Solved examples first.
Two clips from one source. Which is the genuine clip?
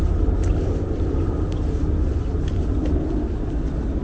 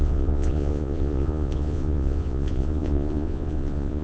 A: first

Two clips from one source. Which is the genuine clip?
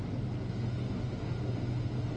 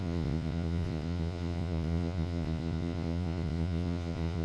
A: first